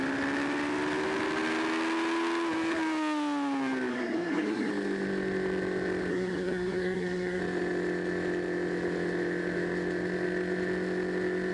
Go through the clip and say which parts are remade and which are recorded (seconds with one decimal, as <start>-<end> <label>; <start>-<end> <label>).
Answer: 0.0-3.9 recorded; 3.9-4.7 remade; 4.7-6.1 recorded; 6.1-7.4 remade; 7.4-11.5 recorded